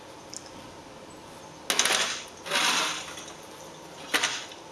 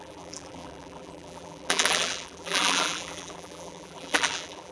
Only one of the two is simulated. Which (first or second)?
second